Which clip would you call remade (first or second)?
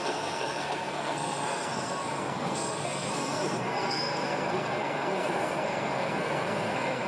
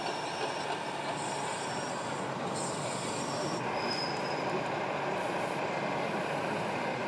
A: first